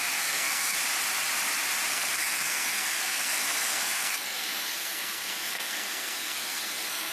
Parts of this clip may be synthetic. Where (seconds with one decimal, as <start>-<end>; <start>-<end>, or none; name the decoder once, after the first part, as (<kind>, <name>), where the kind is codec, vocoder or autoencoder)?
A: 0.0-0.8 (codec, SNAC); 1.9-7.1